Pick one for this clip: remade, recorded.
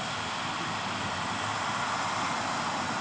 recorded